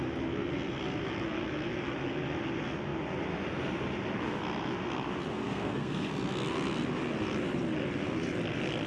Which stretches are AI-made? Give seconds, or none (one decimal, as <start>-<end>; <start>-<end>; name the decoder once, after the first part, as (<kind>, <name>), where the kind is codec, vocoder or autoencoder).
5.3-6.1 (codec, SNAC)